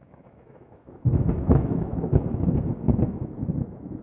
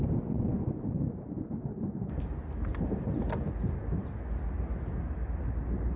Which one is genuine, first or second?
second